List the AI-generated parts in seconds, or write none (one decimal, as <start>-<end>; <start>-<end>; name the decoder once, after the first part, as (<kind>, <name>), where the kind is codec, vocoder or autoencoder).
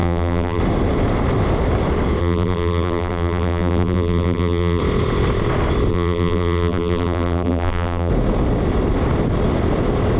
0.0-0.6 (vocoder, BigVGAN v2); 2.2-4.8; 5.9-8.1